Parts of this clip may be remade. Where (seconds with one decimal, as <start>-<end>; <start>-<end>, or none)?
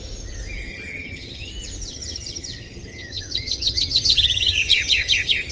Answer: 0.7-1.5; 1.9-5.5